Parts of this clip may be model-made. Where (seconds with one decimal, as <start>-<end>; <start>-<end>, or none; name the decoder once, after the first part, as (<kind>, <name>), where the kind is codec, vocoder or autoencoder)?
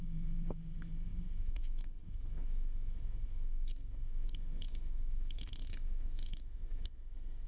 0.0-7.5 (autoencoder, DAC-VAE)